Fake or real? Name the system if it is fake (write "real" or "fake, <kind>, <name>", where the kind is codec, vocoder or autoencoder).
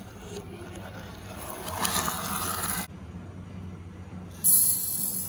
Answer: real